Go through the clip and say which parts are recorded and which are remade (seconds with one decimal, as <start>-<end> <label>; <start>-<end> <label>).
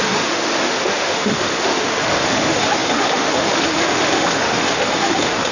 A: 0.0-5.5 remade